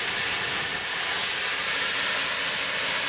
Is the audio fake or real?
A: real